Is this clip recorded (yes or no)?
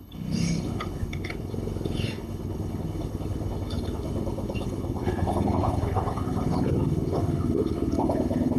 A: no